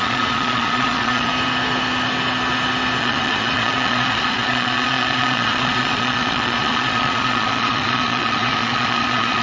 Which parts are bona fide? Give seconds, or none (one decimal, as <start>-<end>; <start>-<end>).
1.3-3.0